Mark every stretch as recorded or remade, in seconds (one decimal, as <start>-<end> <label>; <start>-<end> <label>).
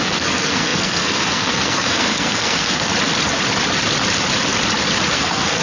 0.0-2.9 remade; 2.9-5.1 recorded; 5.1-5.6 remade